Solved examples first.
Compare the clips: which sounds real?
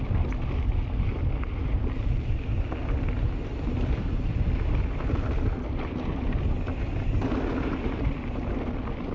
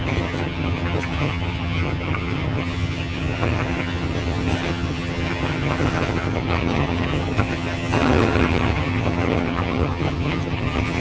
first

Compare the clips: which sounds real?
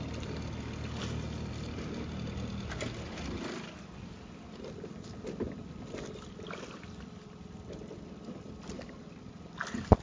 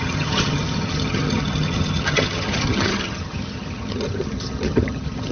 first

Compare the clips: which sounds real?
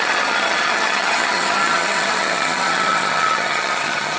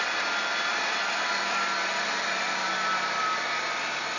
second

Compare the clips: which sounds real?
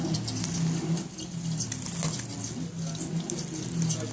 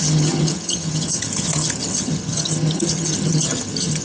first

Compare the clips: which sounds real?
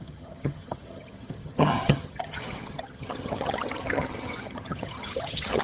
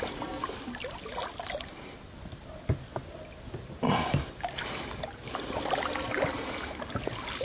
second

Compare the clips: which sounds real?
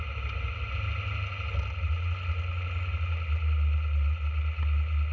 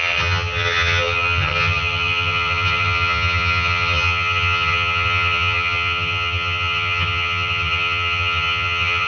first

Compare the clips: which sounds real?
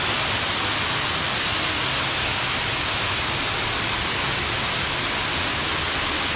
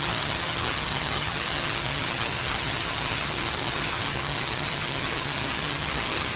first